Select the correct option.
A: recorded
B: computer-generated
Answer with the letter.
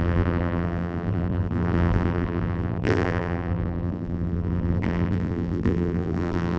B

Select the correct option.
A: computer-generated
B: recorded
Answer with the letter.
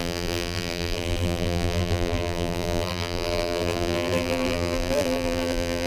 A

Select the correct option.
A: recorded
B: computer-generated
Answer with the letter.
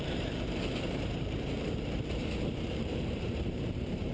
B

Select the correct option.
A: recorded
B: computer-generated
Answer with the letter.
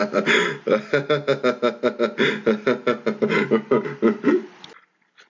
A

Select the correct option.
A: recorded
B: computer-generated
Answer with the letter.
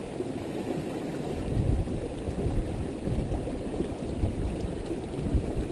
A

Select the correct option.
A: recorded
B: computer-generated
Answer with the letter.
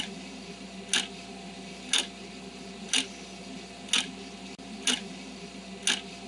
A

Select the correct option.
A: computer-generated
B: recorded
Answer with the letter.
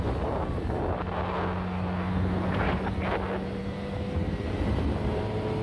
B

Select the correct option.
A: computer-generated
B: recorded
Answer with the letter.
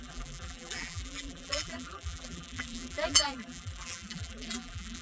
A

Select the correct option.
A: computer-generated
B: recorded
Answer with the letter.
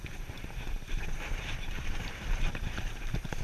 A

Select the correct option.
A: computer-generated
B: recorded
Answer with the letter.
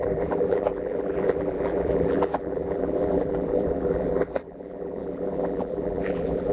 A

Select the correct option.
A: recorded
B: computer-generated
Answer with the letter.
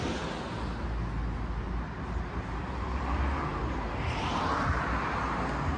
A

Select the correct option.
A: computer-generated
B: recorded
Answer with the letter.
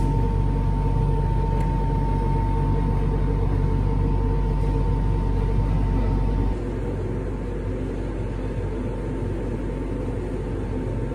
B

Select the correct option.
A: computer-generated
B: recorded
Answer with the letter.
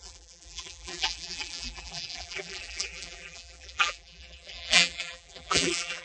A